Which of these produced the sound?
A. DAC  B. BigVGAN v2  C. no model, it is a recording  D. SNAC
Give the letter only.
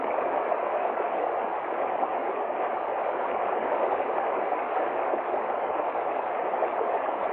A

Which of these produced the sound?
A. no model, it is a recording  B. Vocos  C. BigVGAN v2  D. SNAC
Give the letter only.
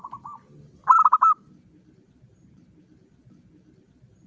C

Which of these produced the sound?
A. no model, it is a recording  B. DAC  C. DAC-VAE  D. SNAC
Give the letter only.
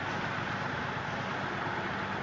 A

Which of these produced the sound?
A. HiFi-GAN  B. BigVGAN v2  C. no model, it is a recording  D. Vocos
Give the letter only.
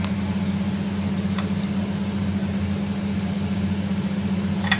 C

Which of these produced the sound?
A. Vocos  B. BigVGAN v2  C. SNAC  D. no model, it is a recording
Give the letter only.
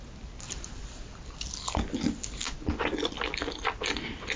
D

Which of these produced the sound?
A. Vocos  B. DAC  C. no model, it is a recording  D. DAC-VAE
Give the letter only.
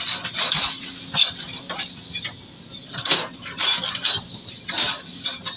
C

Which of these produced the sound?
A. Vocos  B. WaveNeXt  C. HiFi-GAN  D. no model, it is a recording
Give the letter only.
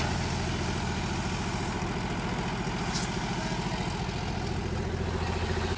D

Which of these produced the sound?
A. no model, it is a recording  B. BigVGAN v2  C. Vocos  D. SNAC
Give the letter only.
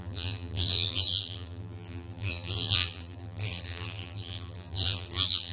B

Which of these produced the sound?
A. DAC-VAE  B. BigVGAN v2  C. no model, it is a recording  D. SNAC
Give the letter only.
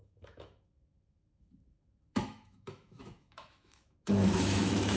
A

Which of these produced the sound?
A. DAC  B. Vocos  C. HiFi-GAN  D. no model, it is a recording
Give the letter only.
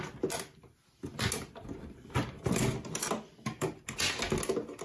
D